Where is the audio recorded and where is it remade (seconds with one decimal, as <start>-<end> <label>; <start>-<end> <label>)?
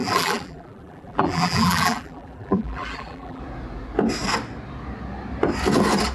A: 0.0-3.4 remade; 3.4-6.1 recorded